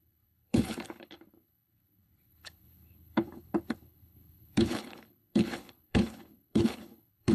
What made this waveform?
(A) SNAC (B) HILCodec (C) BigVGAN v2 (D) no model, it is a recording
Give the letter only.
B